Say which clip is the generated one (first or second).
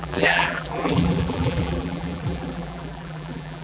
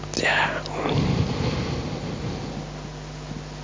first